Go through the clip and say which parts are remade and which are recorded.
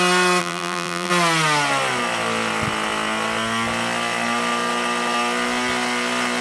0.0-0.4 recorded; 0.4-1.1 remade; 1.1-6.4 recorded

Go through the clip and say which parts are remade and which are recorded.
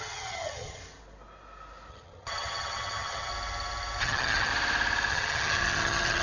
0.0-0.8 remade; 0.8-1.9 recorded; 1.9-3.3 remade; 3.3-4.0 recorded; 4.0-4.5 remade; 4.5-5.1 recorded; 5.1-6.2 remade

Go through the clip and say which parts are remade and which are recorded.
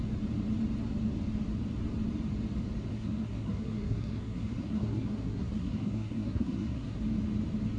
0.0-2.9 recorded; 2.9-7.0 remade; 7.0-7.8 recorded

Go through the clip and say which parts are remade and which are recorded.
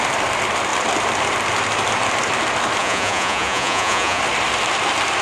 0.0-2.8 recorded; 2.8-4.2 remade; 4.2-5.2 recorded